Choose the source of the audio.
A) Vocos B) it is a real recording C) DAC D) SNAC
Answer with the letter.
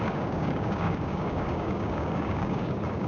C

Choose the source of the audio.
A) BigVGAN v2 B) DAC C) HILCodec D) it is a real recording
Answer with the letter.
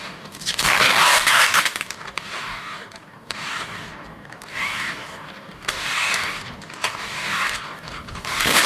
B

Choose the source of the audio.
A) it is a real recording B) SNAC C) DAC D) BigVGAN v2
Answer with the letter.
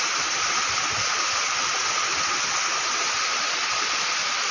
A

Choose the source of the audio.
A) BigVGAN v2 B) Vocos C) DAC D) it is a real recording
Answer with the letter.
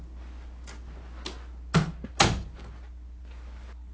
D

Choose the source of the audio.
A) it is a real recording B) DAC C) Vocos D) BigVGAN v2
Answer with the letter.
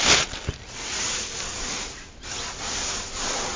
A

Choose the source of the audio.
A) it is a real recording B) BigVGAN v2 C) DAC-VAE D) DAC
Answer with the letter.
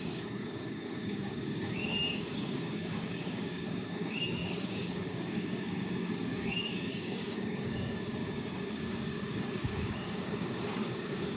D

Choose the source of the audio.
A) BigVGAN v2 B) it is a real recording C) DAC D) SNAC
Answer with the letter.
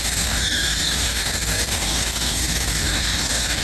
C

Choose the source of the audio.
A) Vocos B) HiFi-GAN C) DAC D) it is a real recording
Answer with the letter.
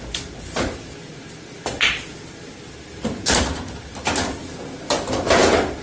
D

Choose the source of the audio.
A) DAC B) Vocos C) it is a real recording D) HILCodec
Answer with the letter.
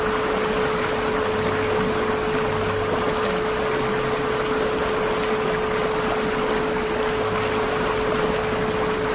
C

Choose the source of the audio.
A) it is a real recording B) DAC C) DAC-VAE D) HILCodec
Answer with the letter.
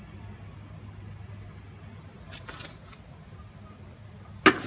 A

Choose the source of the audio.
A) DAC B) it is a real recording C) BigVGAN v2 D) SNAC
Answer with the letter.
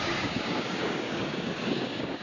A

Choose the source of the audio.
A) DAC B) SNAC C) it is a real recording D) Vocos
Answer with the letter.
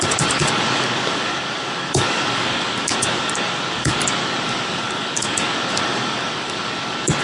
A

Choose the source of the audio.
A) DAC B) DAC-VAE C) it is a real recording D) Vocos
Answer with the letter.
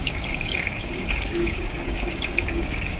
A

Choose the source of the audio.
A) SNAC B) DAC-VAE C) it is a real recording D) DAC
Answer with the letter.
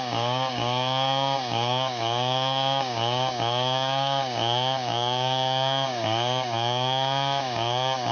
D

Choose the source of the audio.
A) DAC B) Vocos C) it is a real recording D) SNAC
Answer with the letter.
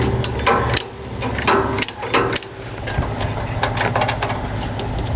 C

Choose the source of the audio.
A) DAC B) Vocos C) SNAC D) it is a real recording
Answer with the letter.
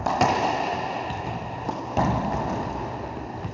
D